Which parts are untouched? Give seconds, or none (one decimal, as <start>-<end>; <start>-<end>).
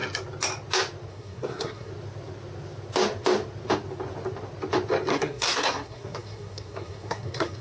0.0-1.1; 1.9-5.1